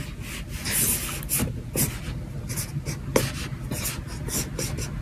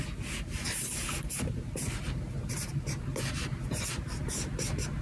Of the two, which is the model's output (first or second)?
second